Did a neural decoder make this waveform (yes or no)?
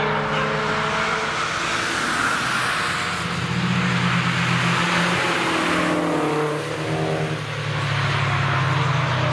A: no